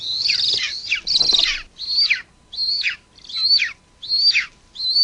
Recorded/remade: recorded